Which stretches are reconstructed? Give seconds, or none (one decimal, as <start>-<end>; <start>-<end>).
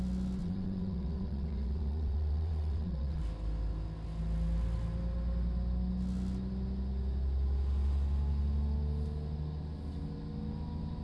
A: 0.4-3.2